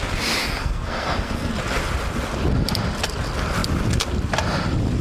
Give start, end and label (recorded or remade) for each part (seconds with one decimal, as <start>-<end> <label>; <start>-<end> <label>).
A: 0.0-0.4 recorded; 0.4-1.5 remade; 1.5-5.0 recorded